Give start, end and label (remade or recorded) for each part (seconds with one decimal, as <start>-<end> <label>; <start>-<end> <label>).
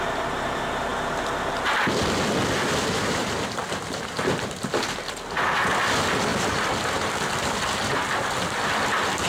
0.0-9.3 recorded